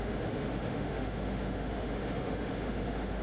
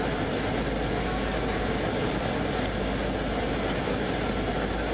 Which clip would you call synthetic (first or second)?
first